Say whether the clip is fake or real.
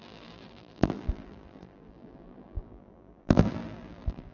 fake